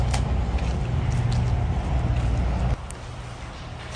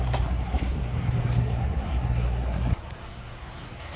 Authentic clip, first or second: first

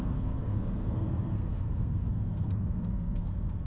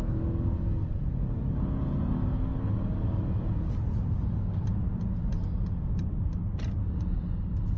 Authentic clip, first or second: second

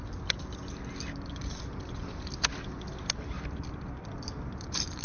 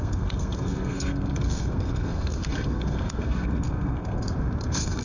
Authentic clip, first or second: first